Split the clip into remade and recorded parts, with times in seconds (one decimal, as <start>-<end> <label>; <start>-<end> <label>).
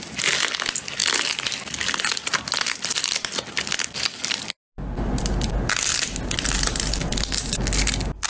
0.0-8.3 recorded